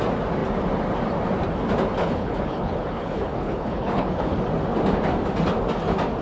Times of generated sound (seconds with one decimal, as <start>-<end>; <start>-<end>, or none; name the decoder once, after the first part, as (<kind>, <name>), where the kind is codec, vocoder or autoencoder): 2.0-4.3 (codec, HILCodec)